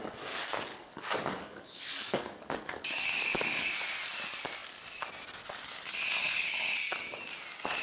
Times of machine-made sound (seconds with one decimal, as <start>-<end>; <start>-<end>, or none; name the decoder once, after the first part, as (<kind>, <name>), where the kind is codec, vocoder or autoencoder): 0.7-3.7 (codec, DAC)